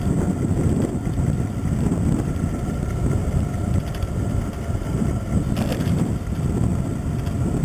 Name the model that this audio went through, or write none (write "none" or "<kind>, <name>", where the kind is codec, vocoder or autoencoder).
vocoder, BigVGAN v2